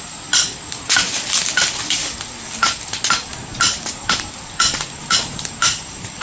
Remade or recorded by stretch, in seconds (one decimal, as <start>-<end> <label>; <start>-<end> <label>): 0.0-3.5 recorded; 3.5-6.2 remade